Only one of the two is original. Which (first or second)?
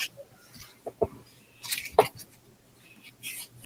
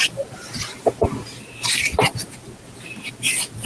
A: first